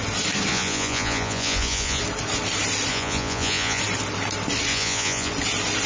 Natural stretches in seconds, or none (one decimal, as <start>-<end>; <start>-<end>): 0.0-0.5; 2.0-2.9; 3.8-4.7; 5.3-5.9